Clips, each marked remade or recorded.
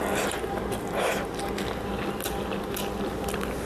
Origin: recorded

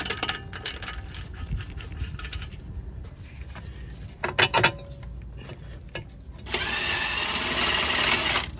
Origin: recorded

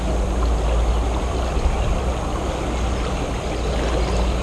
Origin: recorded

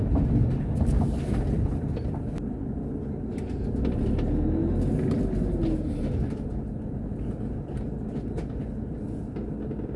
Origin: recorded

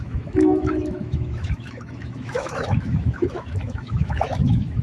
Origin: remade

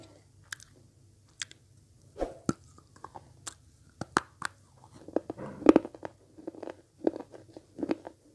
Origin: recorded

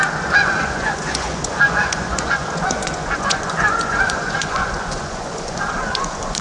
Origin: remade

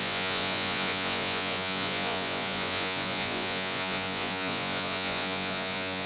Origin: remade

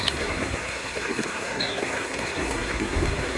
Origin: remade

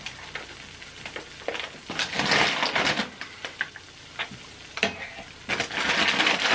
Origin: recorded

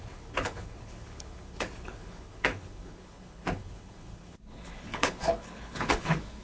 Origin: remade